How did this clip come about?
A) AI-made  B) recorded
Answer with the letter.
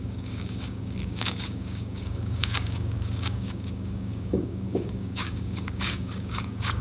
A